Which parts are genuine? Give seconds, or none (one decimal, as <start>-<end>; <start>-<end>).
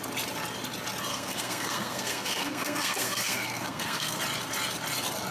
0.0-1.1; 4.2-5.3